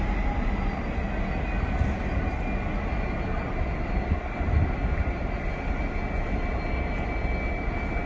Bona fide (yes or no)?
yes